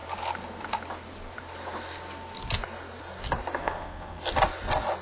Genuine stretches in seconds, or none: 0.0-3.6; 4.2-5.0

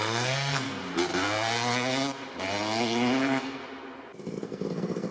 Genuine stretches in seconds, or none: 0.8-3.2; 3.6-4.2

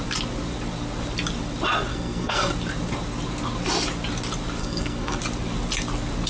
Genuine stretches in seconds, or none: 0.0-1.9; 2.5-4.6; 5.2-6.3

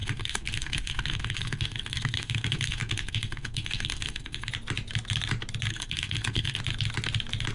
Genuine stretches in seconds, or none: 4.5-5.7; 6.6-7.5

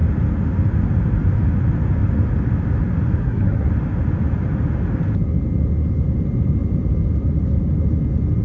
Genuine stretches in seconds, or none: 0.0-3.2; 3.7-8.4